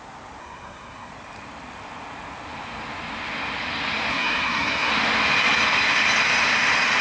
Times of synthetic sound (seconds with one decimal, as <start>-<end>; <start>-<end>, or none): 0.4-1.1; 4.1-4.9